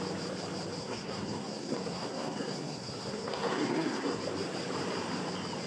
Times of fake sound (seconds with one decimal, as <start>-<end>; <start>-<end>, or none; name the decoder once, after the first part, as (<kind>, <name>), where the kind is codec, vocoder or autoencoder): 0.8-4.2 (codec, SNAC)